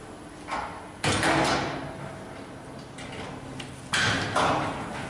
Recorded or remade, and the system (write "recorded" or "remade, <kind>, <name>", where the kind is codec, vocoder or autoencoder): recorded